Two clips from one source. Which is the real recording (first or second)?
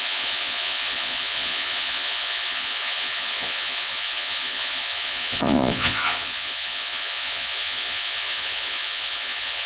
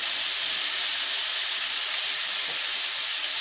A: second